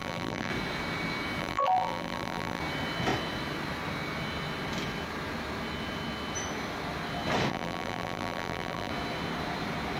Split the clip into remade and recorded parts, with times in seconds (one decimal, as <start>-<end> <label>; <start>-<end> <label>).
0.0-0.5 remade; 0.5-1.4 recorded; 1.4-2.6 remade; 2.6-7.5 recorded; 7.5-8.9 remade; 8.9-10.0 recorded